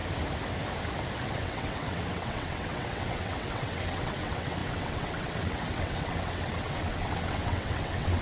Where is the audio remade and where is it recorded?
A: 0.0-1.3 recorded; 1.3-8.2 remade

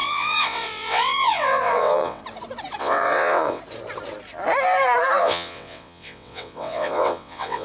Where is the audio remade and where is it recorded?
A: 0.0-2.2 remade; 2.2-2.8 recorded; 2.8-3.6 remade; 3.6-5.2 recorded; 5.2-7.6 remade

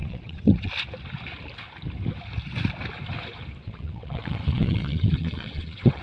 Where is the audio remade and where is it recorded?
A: 0.0-0.7 remade; 0.7-3.6 recorded; 3.6-6.0 remade

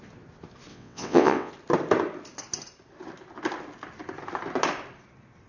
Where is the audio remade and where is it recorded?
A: 0.0-0.7 recorded; 0.7-1.5 remade; 1.5-5.5 recorded

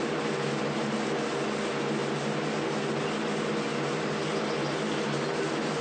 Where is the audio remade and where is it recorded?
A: 0.0-5.8 recorded